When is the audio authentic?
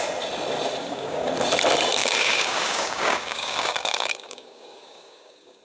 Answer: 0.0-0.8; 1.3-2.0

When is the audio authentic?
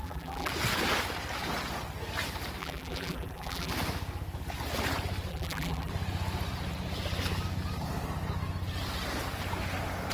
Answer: 0.5-2.6; 3.7-5.3; 5.9-10.1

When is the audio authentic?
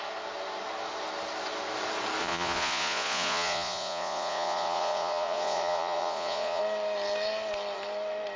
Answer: 0.0-2.2; 6.6-8.4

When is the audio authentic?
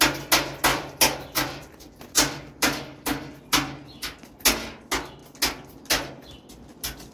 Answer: 0.0-0.7; 3.4-7.1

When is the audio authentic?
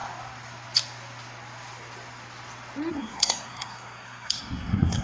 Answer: 0.0-2.9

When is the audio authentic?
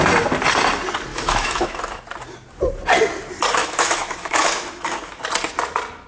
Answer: 0.0-1.1; 2.0-3.6; 5.2-6.1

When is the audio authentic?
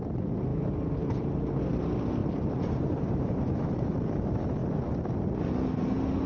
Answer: 0.0-2.2; 3.7-6.3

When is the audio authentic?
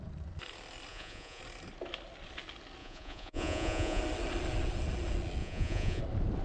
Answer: 0.0-0.9; 1.4-2.8; 4.0-5.4; 6.0-6.4